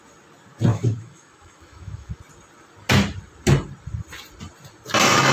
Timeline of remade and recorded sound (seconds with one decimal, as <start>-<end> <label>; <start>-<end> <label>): 0.0-0.7 recorded; 0.7-2.2 remade; 2.2-5.3 recorded

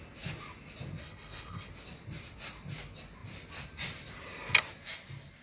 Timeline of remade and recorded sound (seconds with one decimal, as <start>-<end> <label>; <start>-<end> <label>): 0.0-1.0 recorded; 1.0-1.7 remade; 1.7-5.4 recorded

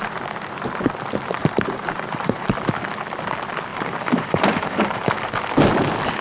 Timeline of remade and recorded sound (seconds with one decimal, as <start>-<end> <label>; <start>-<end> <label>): 0.0-1.4 recorded; 1.4-2.6 remade; 2.6-3.7 recorded; 3.7-5.2 remade; 5.2-6.2 recorded

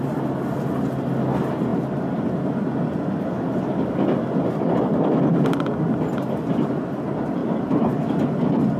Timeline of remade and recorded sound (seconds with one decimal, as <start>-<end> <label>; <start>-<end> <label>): 0.0-8.8 recorded

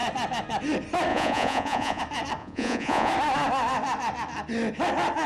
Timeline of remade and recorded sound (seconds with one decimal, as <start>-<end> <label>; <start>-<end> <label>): 0.0-1.1 recorded; 1.1-2.0 remade; 2.0-2.4 recorded; 2.4-3.1 remade; 3.1-5.3 recorded

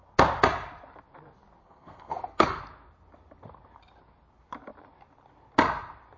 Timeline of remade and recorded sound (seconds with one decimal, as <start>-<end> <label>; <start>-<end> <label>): 0.0-1.6 recorded; 1.6-2.6 remade; 2.6-6.2 recorded

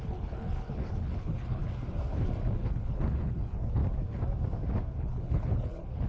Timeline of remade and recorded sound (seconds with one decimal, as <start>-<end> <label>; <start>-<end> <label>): 0.0-1.6 remade; 1.6-2.6 recorded; 2.6-3.8 remade; 3.8-5.0 recorded; 5.0-6.1 remade